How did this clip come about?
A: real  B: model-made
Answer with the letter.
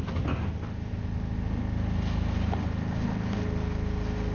A